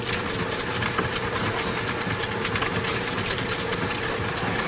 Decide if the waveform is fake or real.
real